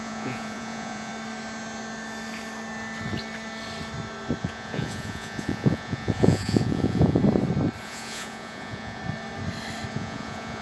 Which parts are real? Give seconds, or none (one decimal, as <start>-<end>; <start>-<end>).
1.1-4.4; 7.2-7.8; 9.0-9.9